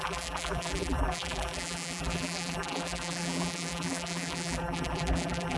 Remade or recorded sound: remade